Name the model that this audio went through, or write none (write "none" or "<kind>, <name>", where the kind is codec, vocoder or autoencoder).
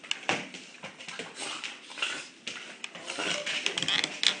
none